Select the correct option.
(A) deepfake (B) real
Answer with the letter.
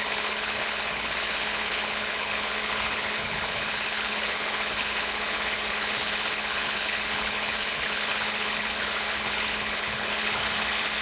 A